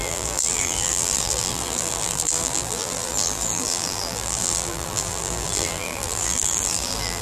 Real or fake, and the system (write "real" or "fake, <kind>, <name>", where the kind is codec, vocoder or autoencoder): fake, vocoder, BigVGAN v2